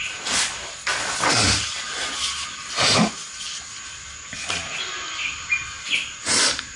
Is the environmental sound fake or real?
real